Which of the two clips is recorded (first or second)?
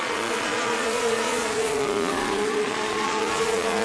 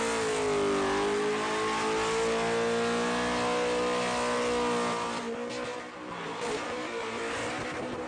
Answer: second